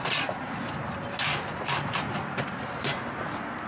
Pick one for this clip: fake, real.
real